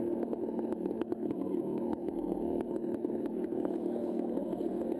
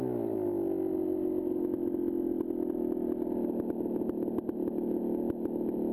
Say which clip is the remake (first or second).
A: first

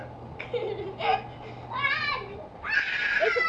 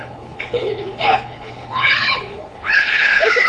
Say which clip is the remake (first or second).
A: second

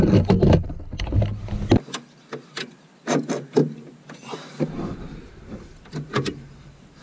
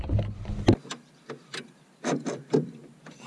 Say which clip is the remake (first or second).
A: second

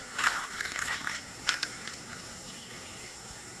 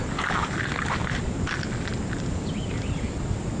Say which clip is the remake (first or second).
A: first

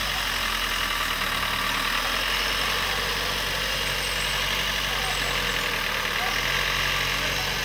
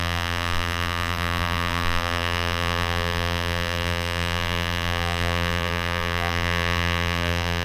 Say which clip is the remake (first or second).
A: second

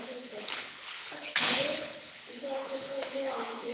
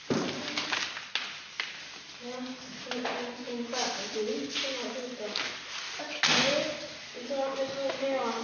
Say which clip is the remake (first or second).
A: first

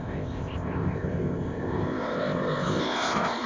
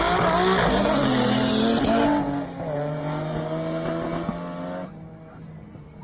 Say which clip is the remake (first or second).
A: first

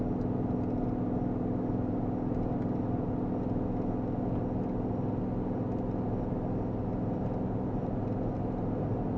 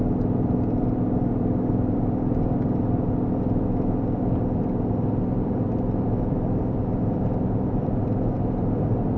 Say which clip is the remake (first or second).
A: second